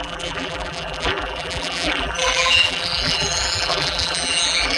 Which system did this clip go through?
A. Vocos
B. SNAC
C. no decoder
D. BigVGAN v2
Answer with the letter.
D